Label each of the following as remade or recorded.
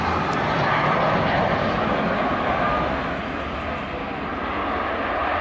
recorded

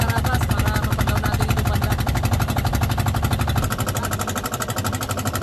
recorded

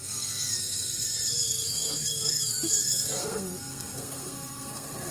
remade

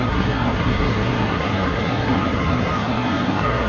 remade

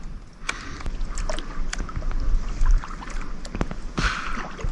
recorded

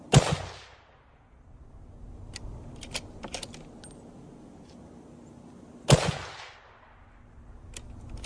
recorded